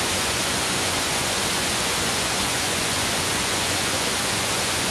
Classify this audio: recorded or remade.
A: remade